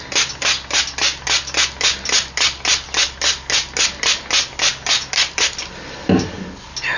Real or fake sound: real